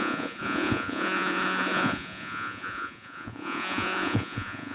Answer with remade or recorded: remade